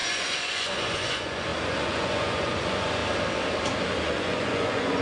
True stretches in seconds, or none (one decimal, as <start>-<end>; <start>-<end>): 3.0-3.9